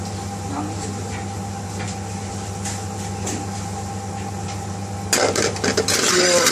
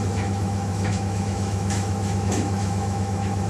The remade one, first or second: second